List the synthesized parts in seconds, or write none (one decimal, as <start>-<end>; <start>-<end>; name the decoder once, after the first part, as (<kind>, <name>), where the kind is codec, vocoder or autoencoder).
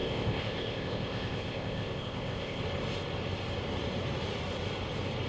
0.0-2.6 (codec, ZipCodec)